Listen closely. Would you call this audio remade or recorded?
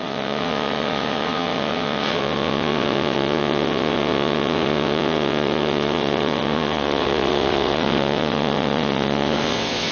remade